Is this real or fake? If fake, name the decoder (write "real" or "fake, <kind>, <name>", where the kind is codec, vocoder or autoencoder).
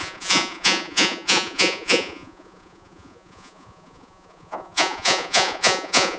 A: fake, vocoder, Vocos